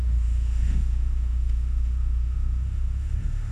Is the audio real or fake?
fake